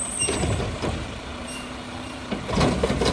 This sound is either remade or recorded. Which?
remade